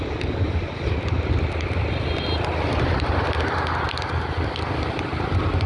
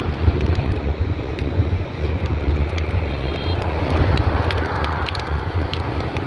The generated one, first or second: second